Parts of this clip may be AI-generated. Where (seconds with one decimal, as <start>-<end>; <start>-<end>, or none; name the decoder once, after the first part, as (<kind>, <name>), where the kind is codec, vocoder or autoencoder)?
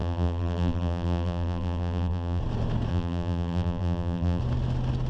0.0-2.4 (vocoder, BigVGAN v2); 2.9-4.4